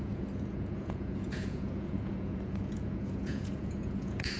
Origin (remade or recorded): remade